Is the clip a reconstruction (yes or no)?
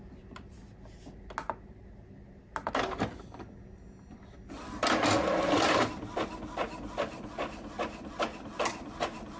no